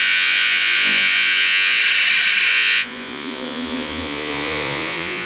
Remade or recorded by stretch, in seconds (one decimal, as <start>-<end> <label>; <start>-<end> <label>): 0.0-1.8 remade; 1.8-2.5 recorded; 2.5-5.3 remade